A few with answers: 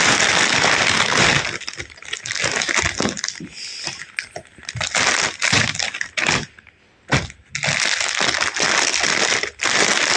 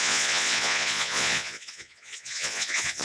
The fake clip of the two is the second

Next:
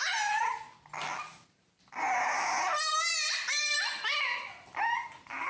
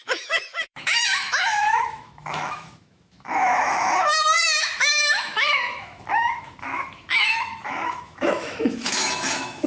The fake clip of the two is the second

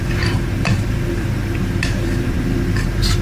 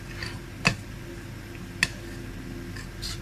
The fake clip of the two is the first